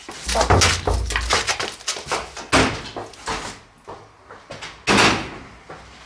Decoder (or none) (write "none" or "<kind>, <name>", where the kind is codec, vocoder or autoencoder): none